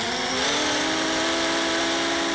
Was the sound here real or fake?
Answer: real